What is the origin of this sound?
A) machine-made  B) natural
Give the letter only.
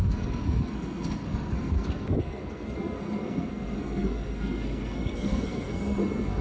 A